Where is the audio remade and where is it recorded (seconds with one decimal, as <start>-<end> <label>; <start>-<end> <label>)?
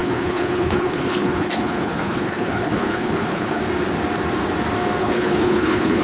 0.0-3.6 remade; 3.6-5.0 recorded; 5.0-6.0 remade